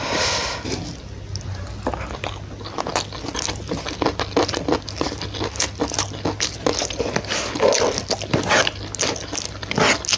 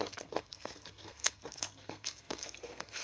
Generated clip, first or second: second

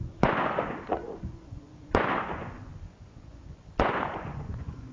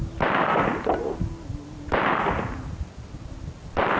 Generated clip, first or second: first